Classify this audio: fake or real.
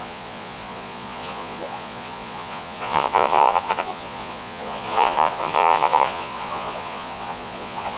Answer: fake